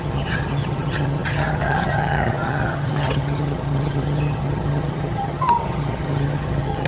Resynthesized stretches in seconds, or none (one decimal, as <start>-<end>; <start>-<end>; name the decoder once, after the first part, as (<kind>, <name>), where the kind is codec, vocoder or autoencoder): 0.0-6.9 (vocoder, HiFi-GAN)